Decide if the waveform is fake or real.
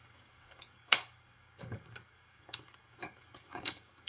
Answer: fake